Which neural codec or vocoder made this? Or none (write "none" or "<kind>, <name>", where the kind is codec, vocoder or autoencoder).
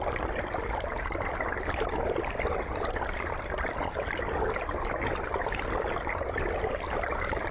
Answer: none